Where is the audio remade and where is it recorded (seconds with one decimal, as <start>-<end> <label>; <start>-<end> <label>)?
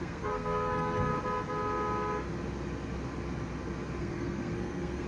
0.0-1.1 remade; 1.1-4.0 recorded; 4.0-5.1 remade